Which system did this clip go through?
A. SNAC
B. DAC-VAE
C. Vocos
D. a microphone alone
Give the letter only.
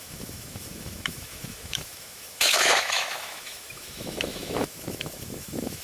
B